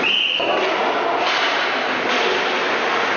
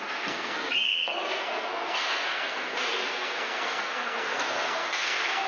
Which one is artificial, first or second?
second